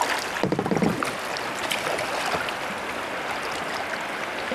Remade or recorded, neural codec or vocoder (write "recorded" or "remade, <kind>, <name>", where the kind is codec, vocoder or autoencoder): recorded